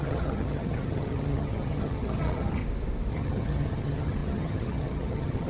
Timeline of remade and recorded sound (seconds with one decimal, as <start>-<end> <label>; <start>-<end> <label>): 0.0-2.6 remade; 2.6-3.1 recorded; 3.1-5.5 remade